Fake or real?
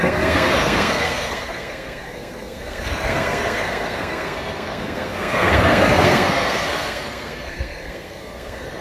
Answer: fake